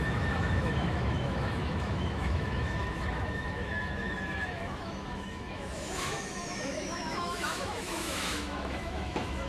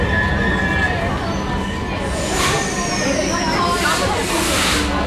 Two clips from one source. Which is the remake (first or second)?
first